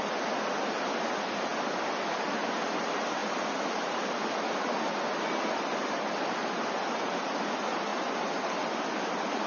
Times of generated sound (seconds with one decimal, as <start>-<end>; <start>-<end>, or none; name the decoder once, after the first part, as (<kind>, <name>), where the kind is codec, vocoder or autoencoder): none